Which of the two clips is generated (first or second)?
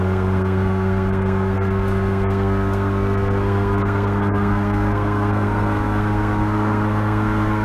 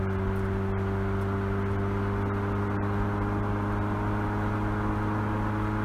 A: first